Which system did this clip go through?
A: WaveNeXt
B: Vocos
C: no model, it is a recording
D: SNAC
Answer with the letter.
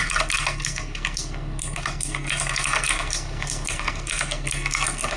D